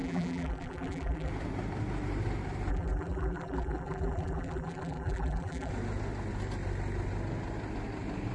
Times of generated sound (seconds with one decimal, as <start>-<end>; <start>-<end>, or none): 0.0-1.3; 2.7-5.7